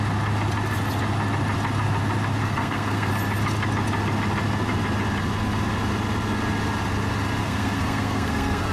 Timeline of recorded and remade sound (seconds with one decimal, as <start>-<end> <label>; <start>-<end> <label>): 0.0-2.4 recorded; 2.4-3.1 remade; 3.1-7.4 recorded; 7.4-8.7 remade